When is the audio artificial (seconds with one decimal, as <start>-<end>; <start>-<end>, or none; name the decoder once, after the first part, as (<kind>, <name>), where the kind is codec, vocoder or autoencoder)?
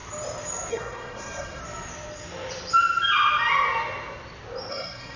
0.7-1.6 (codec, SNAC); 4.7-5.2